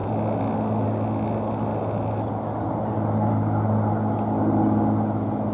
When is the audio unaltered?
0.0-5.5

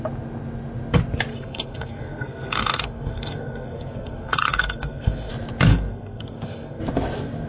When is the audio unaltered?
0.0-1.3; 5.3-5.7; 6.8-7.5

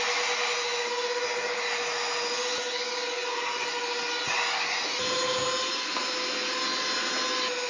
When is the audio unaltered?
0.0-7.7

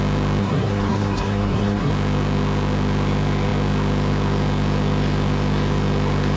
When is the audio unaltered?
0.0-0.4; 1.9-6.4

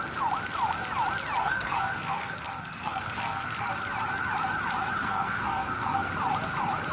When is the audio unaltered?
0.0-1.4; 3.7-5.0; 6.1-6.9

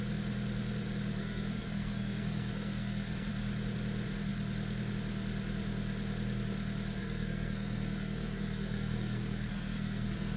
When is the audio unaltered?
0.0-1.2; 3.3-7.0

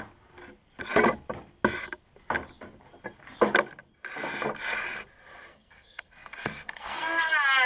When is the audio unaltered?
0.0-5.5; 7.3-7.7

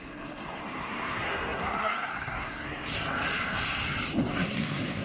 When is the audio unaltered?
2.9-4.3